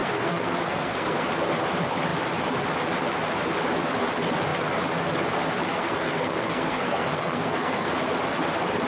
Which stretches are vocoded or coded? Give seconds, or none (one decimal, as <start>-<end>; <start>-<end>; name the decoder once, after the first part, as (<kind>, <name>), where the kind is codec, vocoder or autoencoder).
0.0-1.3 (codec, SNAC); 5.7-7.9